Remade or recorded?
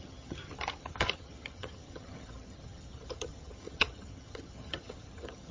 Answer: remade